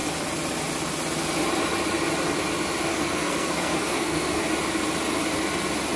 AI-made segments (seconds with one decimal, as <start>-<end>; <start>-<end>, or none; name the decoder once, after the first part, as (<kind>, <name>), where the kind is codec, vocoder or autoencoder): 2.9-4.4 (codec, SNAC)